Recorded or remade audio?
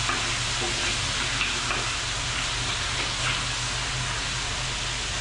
recorded